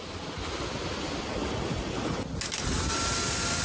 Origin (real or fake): real